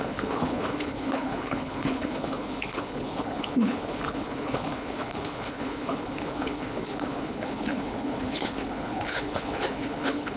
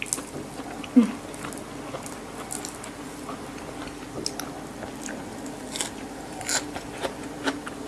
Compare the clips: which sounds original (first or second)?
second